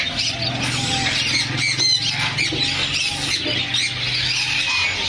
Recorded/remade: recorded